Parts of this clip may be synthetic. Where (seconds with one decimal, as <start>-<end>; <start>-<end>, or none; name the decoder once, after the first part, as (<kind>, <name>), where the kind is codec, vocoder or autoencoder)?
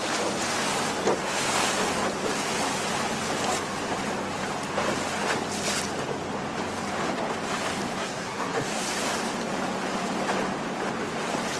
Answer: 8.0-8.8 (codec, SNAC)